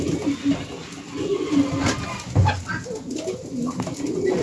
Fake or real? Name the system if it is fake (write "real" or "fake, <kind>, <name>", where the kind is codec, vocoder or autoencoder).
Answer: real